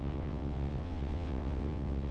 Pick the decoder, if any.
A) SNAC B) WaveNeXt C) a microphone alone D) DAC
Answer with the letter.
B